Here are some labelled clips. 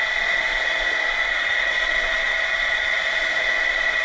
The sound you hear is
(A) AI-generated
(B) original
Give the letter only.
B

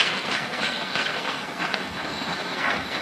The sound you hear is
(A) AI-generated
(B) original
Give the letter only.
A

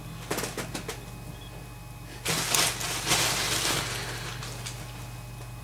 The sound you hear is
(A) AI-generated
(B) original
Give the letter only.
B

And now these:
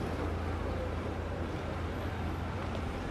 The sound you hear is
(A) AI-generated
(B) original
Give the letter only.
B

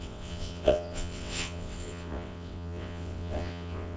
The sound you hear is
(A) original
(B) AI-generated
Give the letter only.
B